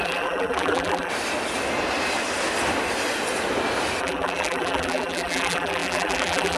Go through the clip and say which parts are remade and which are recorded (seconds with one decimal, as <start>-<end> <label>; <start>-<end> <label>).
0.0-1.1 remade; 1.1-4.0 recorded; 4.0-6.6 remade